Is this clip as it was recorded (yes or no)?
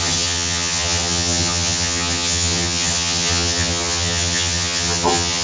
no